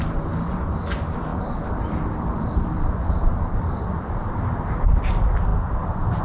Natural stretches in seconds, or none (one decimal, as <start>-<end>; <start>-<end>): 0.0-1.3; 5.0-6.2